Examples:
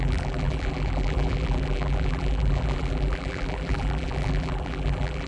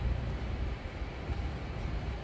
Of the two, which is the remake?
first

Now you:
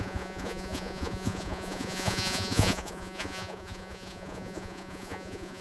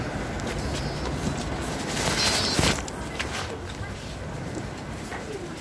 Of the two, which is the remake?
first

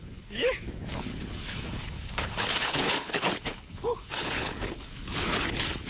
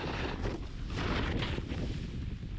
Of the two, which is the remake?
first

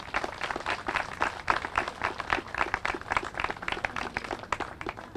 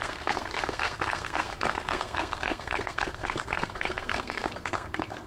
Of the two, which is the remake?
second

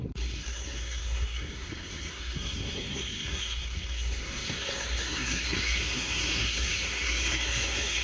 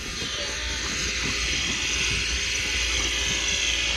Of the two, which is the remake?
first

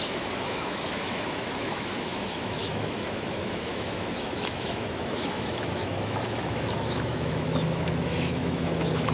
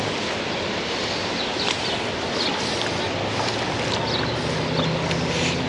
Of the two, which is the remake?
first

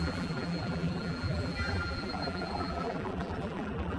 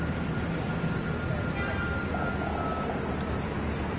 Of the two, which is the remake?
first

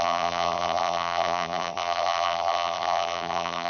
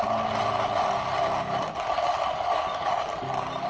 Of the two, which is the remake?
first